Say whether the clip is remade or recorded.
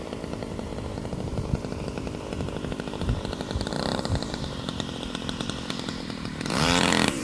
remade